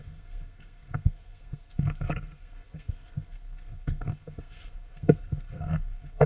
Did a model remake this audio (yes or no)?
yes